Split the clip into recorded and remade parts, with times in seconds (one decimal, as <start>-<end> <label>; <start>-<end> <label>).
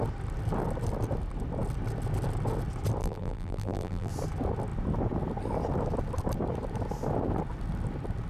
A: 0.0-3.0 recorded; 3.0-4.1 remade; 4.1-8.3 recorded